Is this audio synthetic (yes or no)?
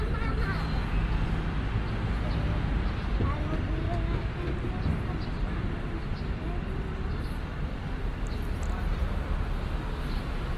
no